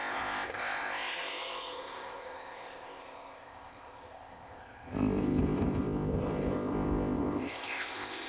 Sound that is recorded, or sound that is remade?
remade